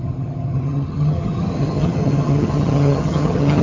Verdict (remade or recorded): remade